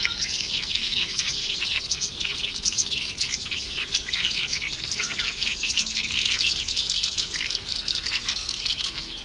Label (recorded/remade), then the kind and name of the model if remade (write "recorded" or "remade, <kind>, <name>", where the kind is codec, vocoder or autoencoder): remade, codec, SNAC